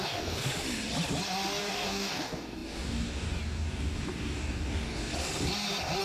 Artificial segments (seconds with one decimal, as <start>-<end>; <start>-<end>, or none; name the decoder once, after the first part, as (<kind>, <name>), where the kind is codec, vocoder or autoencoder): 0.0-0.5 (codec, DAC); 1.6-5.1